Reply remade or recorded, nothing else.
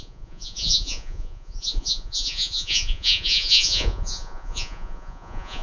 remade